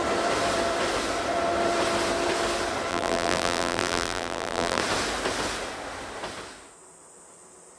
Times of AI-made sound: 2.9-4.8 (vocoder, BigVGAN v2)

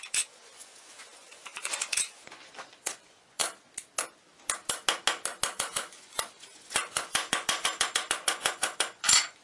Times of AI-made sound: 0.0-3.4 (vocoder, Vocos); 5.6-9.4

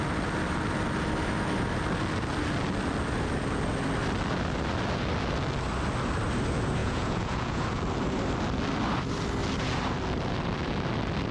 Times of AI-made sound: 6.8-7.8 (vocoder, Vocos)